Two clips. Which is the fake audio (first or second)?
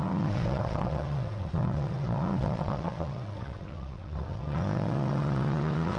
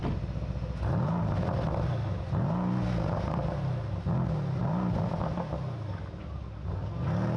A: first